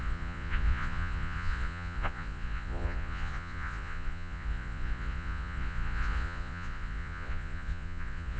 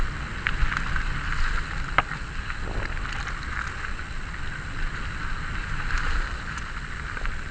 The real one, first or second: second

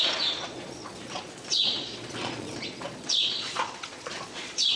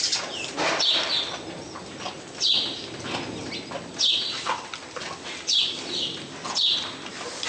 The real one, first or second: second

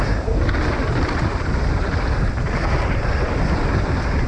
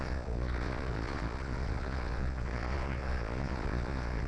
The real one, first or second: first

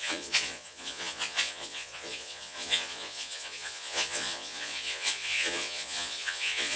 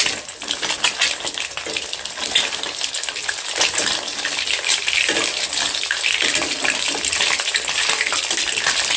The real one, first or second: second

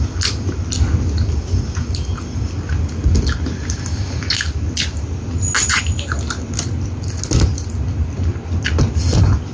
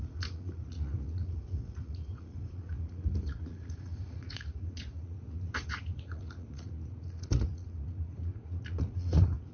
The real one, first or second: first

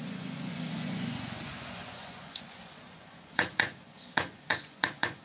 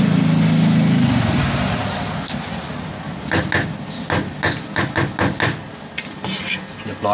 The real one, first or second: second